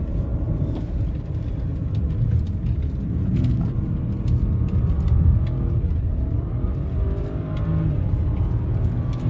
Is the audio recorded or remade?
recorded